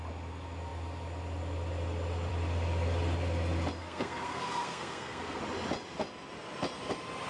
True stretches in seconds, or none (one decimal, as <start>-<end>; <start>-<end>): 0.0-3.8; 5.4-7.3

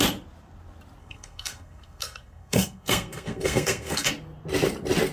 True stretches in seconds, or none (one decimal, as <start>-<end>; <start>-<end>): 0.0-1.0; 4.1-5.1

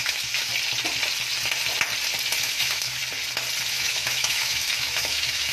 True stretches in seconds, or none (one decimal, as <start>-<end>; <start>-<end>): 0.5-2.4; 3.0-3.7

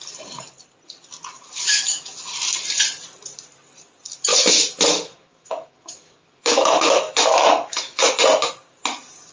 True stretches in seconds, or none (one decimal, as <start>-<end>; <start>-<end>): 0.0-1.7; 2.3-4.3; 8.1-9.3

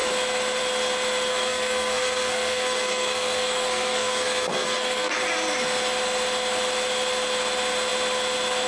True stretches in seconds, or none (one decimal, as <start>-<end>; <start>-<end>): 0.0-1.3; 5.1-8.7

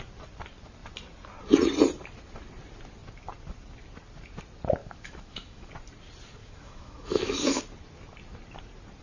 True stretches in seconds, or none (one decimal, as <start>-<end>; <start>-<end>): 0.0-4.8; 5.7-6.4; 7.6-9.0